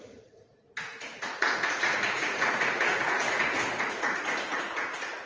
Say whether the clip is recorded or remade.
remade